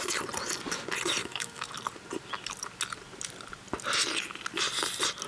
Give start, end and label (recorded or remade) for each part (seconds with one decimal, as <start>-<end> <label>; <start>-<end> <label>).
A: 0.0-1.2 recorded; 1.2-1.7 remade; 1.7-5.3 recorded